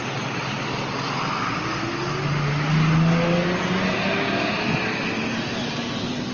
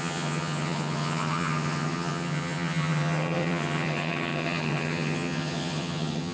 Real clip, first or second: first